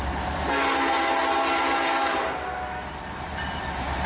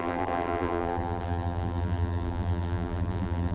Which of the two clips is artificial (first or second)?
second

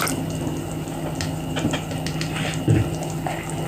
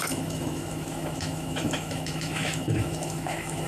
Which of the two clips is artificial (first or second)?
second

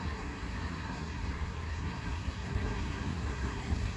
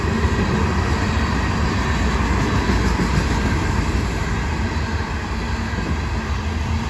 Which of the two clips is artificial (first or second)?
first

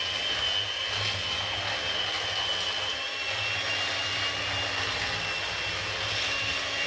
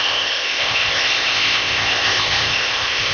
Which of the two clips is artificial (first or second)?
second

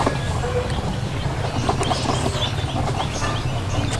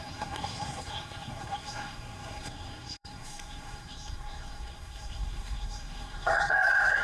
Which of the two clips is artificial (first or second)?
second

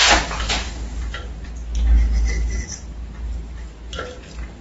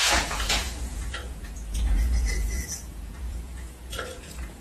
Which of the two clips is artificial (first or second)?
second